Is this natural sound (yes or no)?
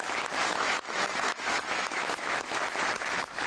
no